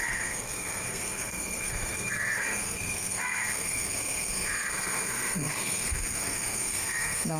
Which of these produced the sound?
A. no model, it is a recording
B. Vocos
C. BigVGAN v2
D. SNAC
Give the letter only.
D